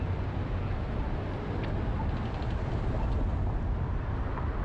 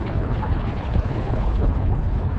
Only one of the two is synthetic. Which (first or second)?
second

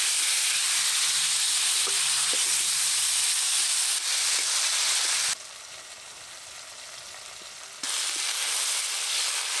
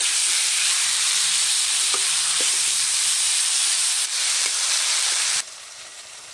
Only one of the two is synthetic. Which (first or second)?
second